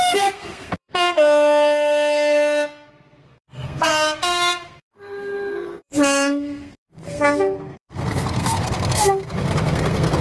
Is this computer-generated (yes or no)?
yes